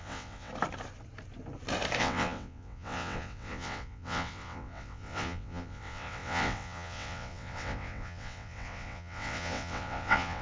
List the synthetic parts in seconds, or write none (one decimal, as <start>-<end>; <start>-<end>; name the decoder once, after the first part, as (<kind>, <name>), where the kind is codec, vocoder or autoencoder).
0.0-0.5 (vocoder, WaveNeXt); 2.0-10.4